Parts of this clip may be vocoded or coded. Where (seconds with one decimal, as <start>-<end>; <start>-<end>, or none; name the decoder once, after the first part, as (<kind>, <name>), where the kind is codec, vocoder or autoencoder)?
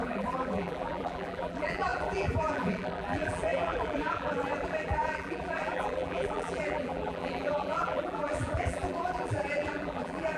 0.0-10.4 (vocoder, BigVGAN v2)